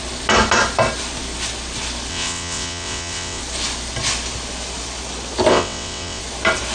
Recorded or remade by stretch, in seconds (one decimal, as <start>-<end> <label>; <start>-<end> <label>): 0.0-2.1 recorded; 2.1-3.4 remade; 3.4-5.5 recorded; 5.5-6.2 remade; 6.2-6.7 recorded